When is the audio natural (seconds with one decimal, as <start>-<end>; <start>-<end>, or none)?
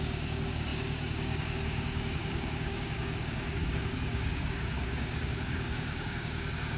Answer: none